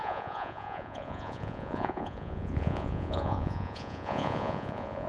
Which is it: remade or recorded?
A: remade